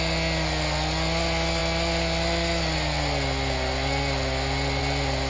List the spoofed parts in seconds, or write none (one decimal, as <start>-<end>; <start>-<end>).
none